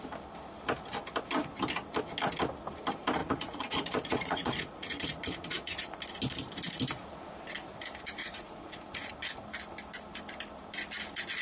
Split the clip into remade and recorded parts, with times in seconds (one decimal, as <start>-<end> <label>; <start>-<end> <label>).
0.0-3.2 recorded; 3.2-6.0 remade; 6.0-8.2 recorded; 8.2-9.1 remade; 9.1-11.4 recorded